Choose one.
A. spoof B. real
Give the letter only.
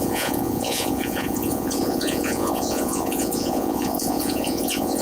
A